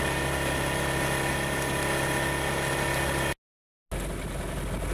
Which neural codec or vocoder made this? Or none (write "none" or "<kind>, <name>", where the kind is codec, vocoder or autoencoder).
none